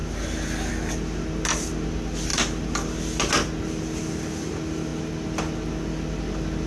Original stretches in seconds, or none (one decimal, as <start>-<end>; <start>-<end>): 0.0-6.7